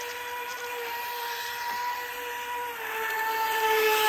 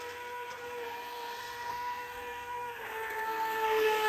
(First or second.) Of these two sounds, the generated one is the second